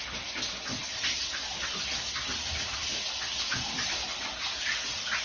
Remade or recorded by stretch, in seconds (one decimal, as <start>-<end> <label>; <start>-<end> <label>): 0.0-5.2 recorded